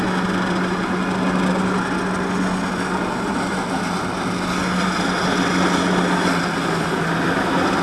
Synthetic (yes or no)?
no